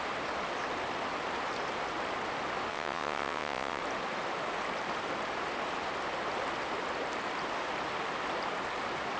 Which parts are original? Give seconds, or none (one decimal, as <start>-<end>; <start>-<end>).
0.0-2.7; 3.8-9.2